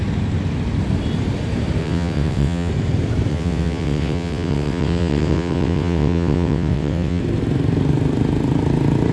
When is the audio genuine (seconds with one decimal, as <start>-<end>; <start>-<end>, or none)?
0.0-1.8; 2.7-3.3; 7.2-9.1

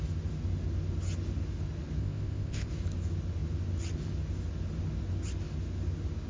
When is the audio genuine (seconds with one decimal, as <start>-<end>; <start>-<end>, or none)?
0.0-2.0; 2.7-6.3

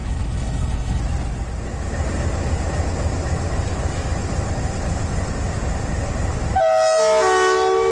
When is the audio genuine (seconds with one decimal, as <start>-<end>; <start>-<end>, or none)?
1.0-7.9